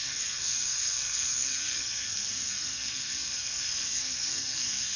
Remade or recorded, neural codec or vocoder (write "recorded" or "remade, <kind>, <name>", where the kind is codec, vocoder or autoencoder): remade, codec, SNAC